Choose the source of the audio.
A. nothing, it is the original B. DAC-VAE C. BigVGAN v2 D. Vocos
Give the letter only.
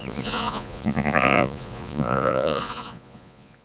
D